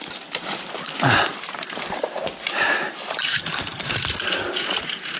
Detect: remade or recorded remade